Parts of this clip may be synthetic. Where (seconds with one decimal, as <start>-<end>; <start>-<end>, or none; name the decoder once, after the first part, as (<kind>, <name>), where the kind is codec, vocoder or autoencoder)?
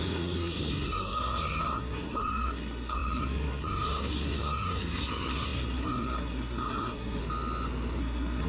0.0-7.2 (codec, SNAC); 8.0-8.5